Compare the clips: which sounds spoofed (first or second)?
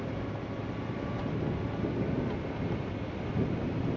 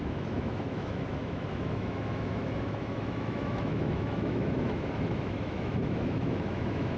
second